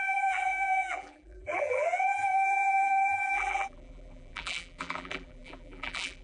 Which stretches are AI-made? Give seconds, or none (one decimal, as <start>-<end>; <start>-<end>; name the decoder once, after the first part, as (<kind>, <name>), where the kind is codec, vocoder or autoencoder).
0.0-6.2 (vocoder, BigVGAN v2)